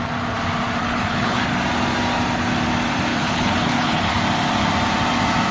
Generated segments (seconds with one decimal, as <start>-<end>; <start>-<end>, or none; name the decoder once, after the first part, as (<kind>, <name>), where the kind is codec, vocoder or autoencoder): 0.8-1.4 (codec, HILCodec); 3.1-4.2